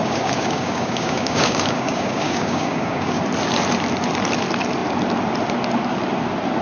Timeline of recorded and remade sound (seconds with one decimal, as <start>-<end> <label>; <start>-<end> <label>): 0.0-3.2 remade; 3.2-6.6 recorded